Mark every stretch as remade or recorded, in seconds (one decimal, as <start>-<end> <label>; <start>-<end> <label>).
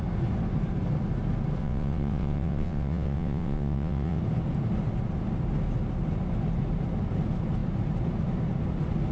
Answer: 0.0-1.6 recorded; 1.6-4.2 remade; 4.2-9.1 recorded